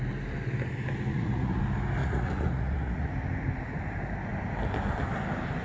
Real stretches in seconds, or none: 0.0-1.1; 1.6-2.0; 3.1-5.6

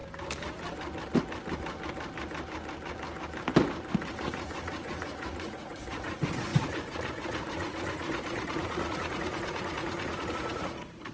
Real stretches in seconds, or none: 0.0-4.2

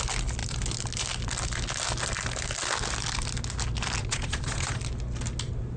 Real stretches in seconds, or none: 0.0-4.0; 4.8-5.8

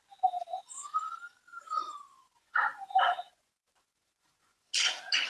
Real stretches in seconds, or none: 0.0-1.5; 4.7-5.3

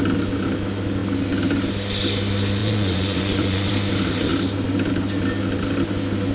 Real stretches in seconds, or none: 0.0-2.6; 3.7-6.3